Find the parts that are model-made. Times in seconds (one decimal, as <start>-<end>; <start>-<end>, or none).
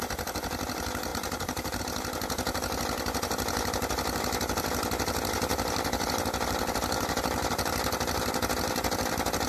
1.1-1.8; 5.5-6.2